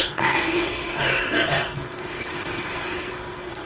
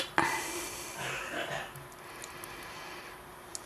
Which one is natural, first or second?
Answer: second